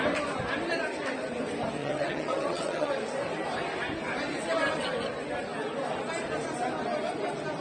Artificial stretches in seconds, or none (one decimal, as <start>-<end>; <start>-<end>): 1.8-2.9